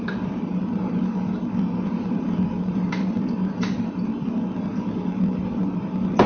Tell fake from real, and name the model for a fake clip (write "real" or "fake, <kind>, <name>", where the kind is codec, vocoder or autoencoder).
fake, vocoder, BigVGAN v2